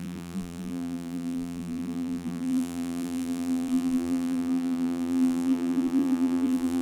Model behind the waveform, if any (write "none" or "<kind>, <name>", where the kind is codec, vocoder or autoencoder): vocoder, BigVGAN v2